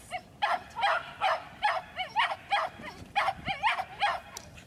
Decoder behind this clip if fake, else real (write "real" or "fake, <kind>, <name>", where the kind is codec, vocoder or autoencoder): fake, vocoder, BigVGAN v2